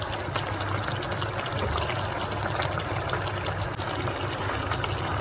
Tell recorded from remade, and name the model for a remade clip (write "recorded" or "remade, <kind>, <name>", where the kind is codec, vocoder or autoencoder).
recorded